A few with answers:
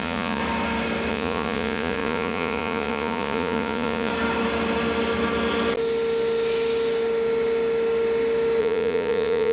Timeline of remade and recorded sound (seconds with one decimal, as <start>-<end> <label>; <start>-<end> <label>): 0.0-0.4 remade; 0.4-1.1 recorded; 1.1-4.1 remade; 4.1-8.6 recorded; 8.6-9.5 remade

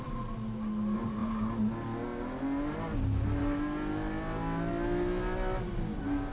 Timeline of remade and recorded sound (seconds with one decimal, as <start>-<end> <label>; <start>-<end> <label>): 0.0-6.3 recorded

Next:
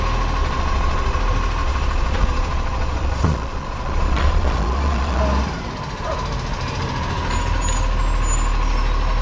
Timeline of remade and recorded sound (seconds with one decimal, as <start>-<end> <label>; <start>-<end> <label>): 0.0-0.4 recorded; 0.4-1.2 remade; 1.2-1.6 recorded; 1.6-5.2 remade; 5.2-9.2 recorded